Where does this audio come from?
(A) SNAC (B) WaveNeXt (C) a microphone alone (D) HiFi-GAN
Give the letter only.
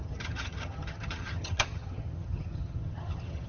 D